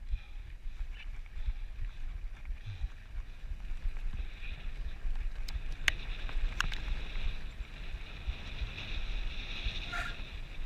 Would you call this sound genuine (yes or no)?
yes